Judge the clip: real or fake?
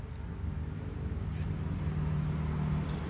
real